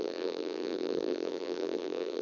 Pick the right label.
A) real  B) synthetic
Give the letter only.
B